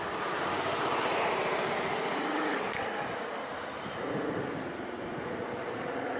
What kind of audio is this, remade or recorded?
recorded